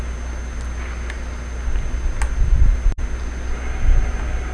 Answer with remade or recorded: recorded